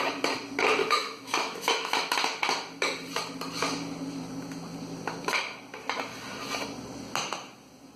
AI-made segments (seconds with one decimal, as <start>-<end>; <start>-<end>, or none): 0.8-2.1